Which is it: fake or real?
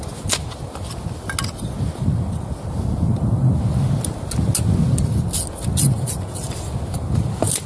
real